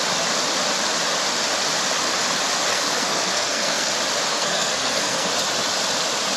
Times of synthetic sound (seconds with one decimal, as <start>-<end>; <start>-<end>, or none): 2.7-3.9; 4.3-5.3